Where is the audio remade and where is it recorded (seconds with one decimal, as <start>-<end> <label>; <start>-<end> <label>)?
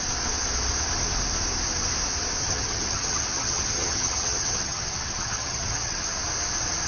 0.0-2.4 recorded; 2.4-6.2 remade; 6.2-6.9 recorded